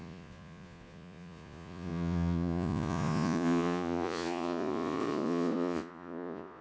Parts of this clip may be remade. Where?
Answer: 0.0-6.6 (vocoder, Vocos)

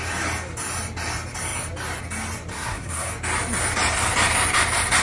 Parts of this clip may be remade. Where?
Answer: 2.5-3.1 (codec, SNAC)